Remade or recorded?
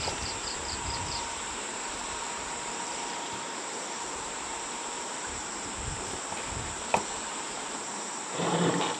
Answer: remade